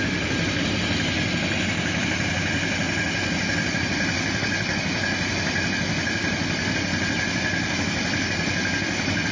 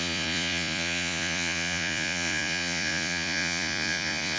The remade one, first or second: second